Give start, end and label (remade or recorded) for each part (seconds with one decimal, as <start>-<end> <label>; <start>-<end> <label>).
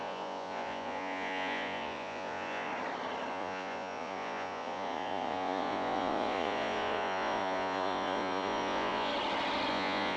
0.0-2.7 remade; 2.7-3.3 recorded; 3.3-9.1 remade; 9.1-9.7 recorded; 9.7-10.2 remade